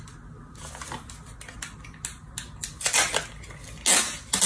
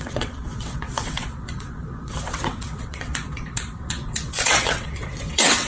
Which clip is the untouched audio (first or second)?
first